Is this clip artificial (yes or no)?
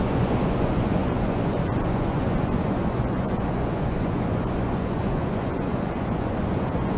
yes